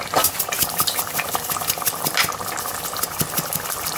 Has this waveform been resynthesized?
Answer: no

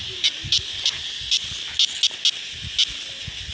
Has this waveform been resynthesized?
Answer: no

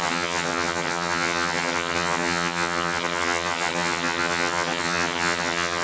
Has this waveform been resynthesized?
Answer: yes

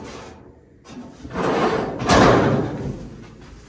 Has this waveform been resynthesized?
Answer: no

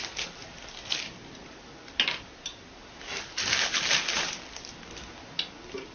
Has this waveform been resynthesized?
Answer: no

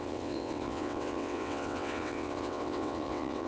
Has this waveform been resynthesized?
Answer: yes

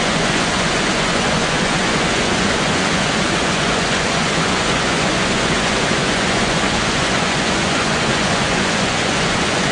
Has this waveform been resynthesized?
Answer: yes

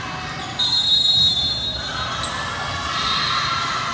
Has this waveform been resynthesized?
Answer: no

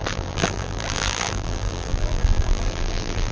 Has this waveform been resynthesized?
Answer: yes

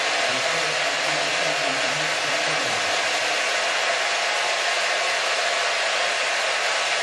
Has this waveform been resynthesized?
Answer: no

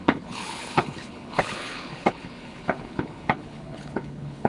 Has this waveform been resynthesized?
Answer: yes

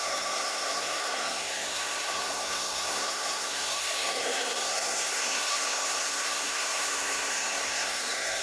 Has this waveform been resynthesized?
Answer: yes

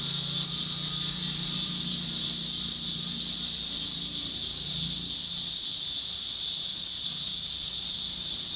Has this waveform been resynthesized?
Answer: yes